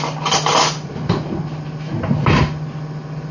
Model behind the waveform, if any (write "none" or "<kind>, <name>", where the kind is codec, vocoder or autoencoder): none